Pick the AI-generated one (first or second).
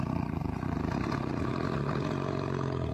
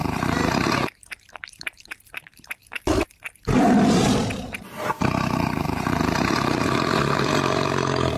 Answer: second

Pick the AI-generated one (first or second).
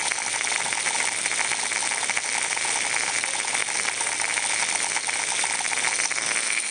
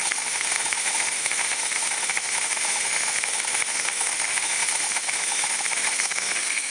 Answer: second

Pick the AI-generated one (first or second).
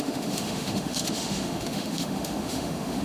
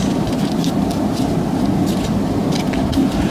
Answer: first